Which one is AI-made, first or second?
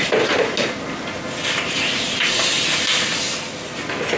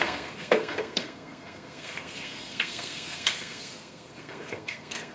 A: second